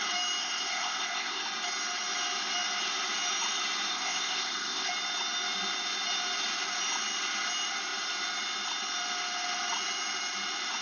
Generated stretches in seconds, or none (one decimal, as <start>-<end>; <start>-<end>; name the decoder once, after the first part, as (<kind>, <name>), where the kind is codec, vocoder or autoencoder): 0.4-1.4 (codec, ZipCodec); 3.9-4.9